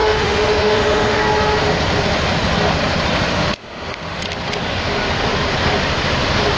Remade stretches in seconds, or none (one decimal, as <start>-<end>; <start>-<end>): 0.0-1.2; 3.3-4.2